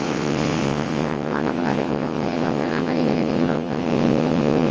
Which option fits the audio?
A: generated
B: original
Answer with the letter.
A